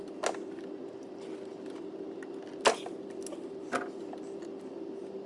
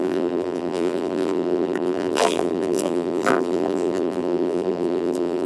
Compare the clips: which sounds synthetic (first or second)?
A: second